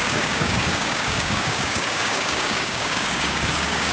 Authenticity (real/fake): fake